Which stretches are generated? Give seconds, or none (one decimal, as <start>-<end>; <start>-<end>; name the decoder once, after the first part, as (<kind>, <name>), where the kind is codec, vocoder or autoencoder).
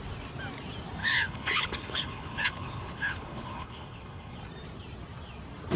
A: 1.0-4.4 (codec, HILCodec)